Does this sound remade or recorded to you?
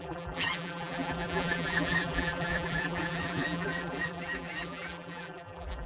remade